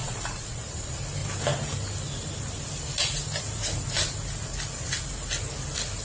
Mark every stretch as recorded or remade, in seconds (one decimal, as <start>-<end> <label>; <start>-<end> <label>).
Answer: 0.0-0.6 remade; 0.6-6.0 recorded

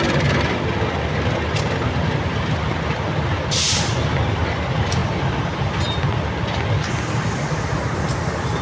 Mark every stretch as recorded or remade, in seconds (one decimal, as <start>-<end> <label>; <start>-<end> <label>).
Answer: 0.0-8.6 recorded

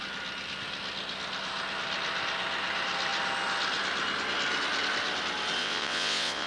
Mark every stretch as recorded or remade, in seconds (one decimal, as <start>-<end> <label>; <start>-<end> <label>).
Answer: 0.0-5.6 recorded; 5.6-6.5 remade

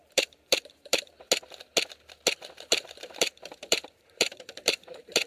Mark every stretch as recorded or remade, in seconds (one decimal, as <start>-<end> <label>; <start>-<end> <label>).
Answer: 0.0-1.1 remade; 1.1-2.7 recorded; 2.7-5.3 remade

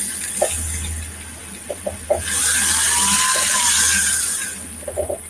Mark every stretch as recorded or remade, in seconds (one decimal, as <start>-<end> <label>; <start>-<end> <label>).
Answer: 0.0-5.3 recorded